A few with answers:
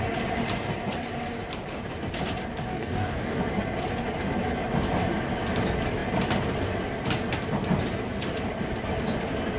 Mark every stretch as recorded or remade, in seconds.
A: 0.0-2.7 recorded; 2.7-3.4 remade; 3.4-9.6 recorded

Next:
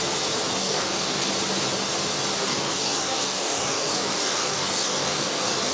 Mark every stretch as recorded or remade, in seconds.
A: 0.0-0.6 recorded; 0.6-1.3 remade; 1.3-2.4 recorded; 2.4-5.7 remade

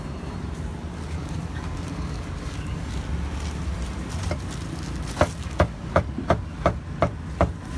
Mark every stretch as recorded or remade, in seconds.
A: 0.0-0.9 recorded; 0.9-2.9 remade; 2.9-5.4 recorded; 5.4-6.0 remade; 6.0-7.8 recorded

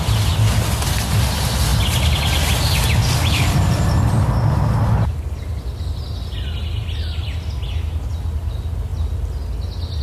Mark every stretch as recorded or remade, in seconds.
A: 0.0-10.0 recorded

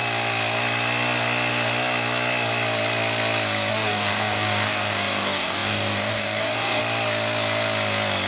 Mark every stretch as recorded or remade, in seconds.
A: 0.0-3.7 recorded; 3.7-6.8 remade; 6.8-8.3 recorded

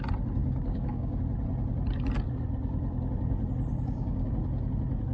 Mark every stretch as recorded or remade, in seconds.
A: 0.0-0.4 recorded; 0.4-1.2 remade; 1.2-3.7 recorded; 3.7-4.3 remade; 4.3-5.1 recorded

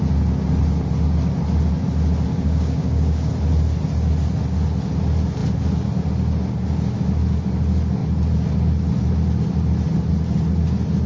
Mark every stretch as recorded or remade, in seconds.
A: 0.0-2.3 recorded; 2.3-3.3 remade; 3.3-11.1 recorded